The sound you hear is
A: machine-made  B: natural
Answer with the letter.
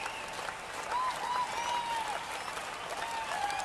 B